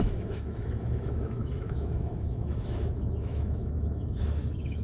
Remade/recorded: remade